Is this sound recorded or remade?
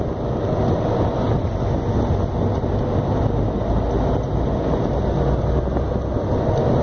recorded